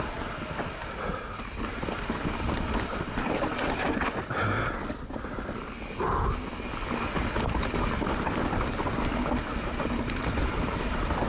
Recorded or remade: recorded